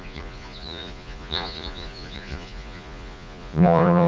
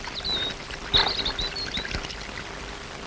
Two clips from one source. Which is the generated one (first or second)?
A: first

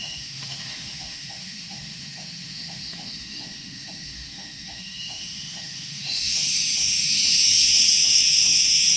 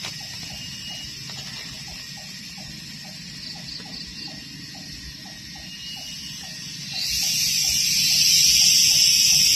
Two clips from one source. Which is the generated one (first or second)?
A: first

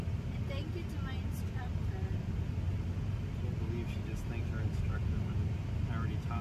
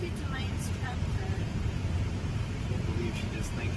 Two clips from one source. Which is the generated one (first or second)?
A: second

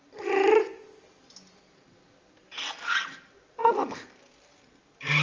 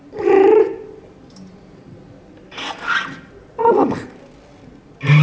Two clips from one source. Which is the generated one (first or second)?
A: second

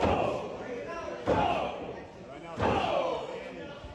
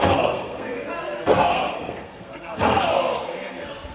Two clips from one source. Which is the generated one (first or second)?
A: second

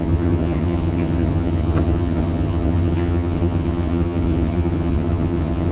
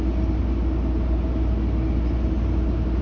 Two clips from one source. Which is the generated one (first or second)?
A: first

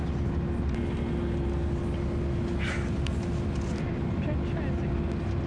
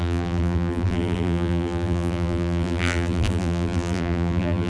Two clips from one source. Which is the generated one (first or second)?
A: second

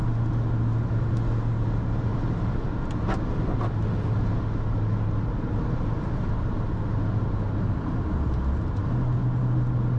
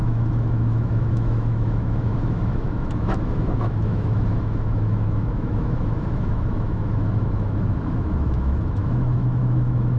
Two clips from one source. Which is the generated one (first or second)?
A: second